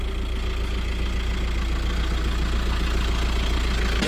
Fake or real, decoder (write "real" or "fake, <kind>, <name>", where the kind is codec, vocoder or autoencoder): real